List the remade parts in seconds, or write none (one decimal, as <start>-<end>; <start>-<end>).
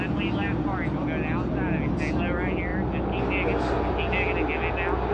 none